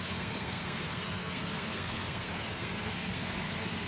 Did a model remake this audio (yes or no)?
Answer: yes